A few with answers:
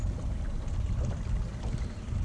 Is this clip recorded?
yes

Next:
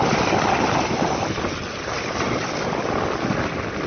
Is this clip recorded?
yes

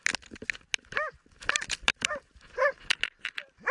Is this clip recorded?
yes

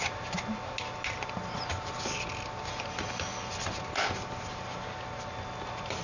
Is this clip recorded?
yes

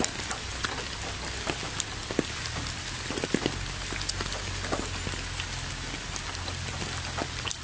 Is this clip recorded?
yes